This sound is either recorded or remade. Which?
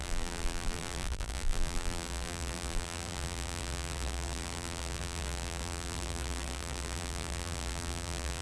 remade